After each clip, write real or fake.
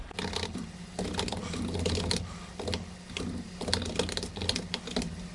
real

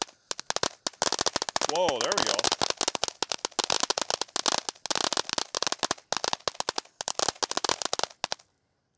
real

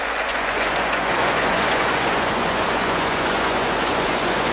fake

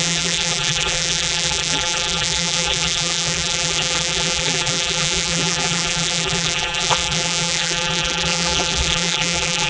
fake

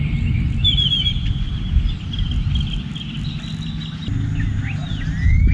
real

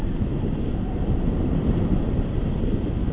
real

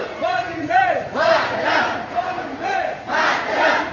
fake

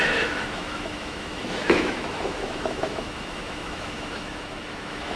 fake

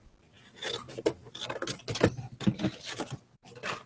real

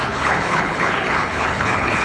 fake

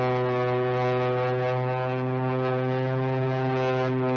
real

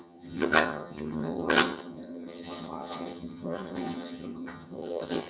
fake